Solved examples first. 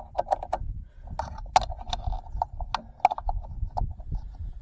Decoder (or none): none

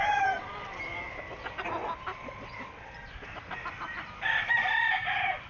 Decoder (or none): none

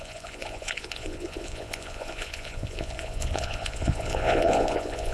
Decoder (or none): vocoder, Vocos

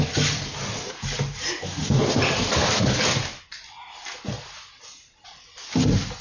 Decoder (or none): none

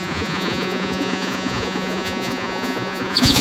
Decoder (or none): vocoder, Vocos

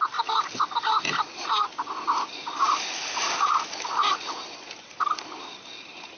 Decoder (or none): none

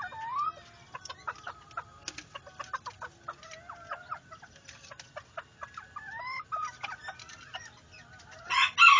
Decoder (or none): none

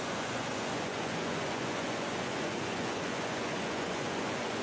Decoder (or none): vocoder, Vocos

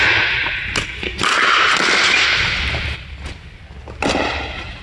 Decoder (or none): none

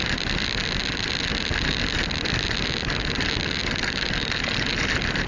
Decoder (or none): none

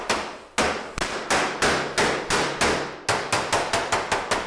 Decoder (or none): none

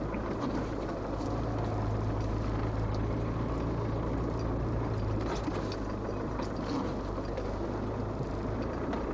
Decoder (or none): none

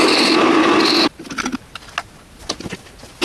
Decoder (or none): none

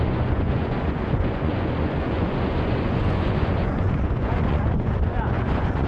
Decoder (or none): vocoder, Vocos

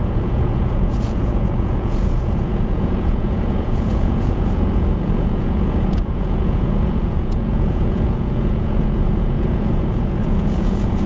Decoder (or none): vocoder, Vocos